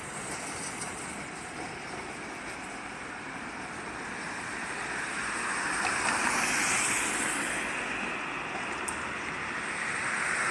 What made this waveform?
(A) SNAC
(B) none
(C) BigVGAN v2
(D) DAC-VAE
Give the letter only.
B